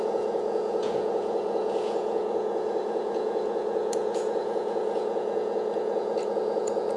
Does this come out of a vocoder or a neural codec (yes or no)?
yes